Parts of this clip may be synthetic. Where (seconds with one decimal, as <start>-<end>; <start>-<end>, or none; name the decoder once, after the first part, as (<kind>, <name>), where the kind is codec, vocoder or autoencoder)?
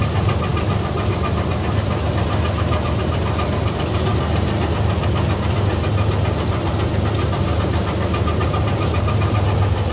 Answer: none